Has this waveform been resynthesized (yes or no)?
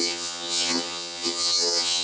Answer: yes